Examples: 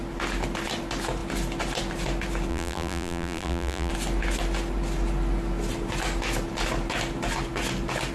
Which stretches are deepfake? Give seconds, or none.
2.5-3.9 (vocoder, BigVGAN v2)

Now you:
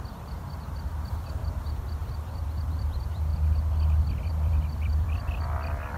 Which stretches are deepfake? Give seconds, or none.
0.0-3.3 (vocoder, BigVGAN v2); 4.2-6.0